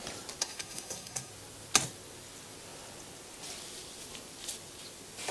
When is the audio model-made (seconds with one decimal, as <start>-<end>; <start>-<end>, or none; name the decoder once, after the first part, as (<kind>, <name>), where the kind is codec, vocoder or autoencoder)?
0.4-1.3 (codec, SNAC)